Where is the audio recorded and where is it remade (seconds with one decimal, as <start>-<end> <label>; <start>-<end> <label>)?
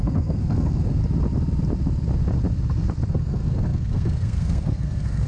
0.0-1.0 remade; 1.0-3.1 recorded; 3.1-5.3 remade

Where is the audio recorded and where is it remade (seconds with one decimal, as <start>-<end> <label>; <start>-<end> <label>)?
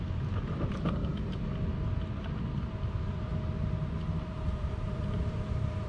0.0-1.0 remade; 1.0-2.6 recorded; 2.6-3.3 remade; 3.3-4.3 recorded; 4.3-5.9 remade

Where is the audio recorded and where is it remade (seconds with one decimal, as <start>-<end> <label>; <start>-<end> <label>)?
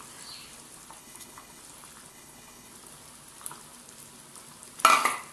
0.0-1.0 recorded; 1.0-1.6 remade; 1.6-2.1 recorded; 2.1-2.7 remade; 2.7-5.3 recorded